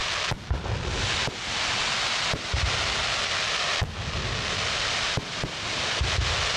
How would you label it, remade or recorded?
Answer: recorded